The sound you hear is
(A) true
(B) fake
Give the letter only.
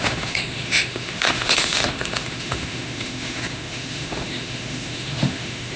B